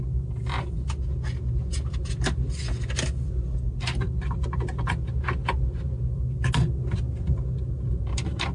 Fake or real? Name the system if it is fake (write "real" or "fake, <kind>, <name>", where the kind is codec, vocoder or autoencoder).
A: real